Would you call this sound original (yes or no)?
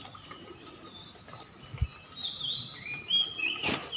yes